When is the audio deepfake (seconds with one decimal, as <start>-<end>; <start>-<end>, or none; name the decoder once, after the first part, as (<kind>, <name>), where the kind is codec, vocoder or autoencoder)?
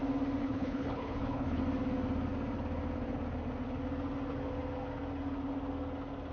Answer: 0.4-1.6 (codec, HILCodec)